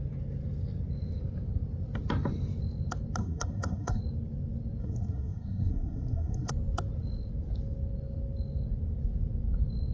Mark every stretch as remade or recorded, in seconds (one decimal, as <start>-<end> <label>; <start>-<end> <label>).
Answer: 0.0-3.2 recorded; 3.2-4.0 remade; 4.0-4.8 recorded; 4.8-6.5 remade; 6.5-9.9 recorded